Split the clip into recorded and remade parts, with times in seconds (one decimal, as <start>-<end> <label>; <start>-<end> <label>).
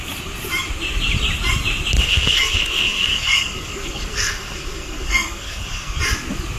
0.0-2.0 recorded; 2.0-6.0 remade; 6.0-6.6 recorded